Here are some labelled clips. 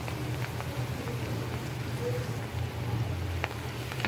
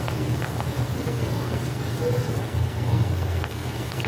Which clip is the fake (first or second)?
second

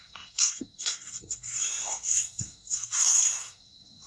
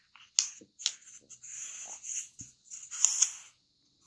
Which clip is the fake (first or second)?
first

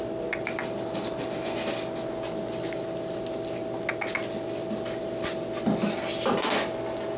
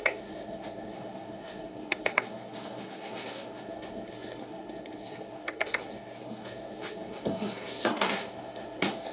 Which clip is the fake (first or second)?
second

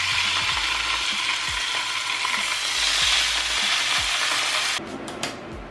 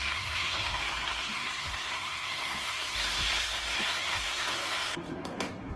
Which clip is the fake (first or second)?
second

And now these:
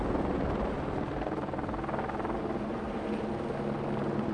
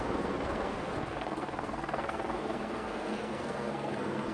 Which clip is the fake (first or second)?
second